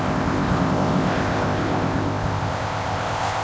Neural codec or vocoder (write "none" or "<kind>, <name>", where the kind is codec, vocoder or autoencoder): codec, ZipCodec